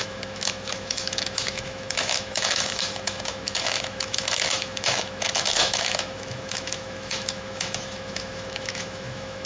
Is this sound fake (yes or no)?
yes